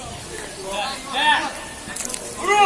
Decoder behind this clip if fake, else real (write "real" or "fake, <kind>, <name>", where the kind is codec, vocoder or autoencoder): real